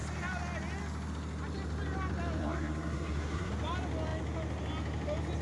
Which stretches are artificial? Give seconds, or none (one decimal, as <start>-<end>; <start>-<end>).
2.4-3.5